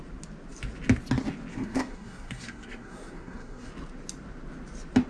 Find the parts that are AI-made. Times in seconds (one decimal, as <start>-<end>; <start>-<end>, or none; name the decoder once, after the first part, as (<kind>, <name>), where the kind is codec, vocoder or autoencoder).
1.5-3.7 (codec, SNAC)